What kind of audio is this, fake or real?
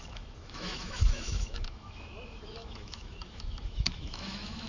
fake